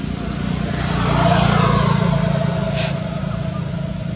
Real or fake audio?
real